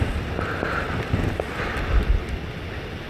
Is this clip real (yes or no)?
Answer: yes